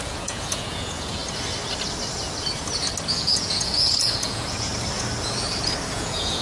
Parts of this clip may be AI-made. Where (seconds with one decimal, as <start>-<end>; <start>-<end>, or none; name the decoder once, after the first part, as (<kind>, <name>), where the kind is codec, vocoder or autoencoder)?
0.0-1.2 (vocoder, Vocos); 3.2-4.7; 5.9-6.4